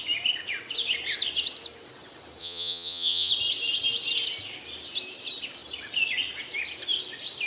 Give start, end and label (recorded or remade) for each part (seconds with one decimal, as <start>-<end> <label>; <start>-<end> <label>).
0.0-2.4 recorded; 2.4-3.3 remade; 3.3-7.5 recorded